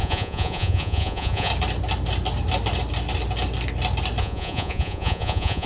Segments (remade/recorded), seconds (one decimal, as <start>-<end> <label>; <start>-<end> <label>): 0.0-1.5 remade; 1.5-4.2 recorded; 4.2-5.7 remade